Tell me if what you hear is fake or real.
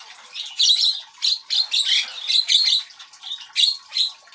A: real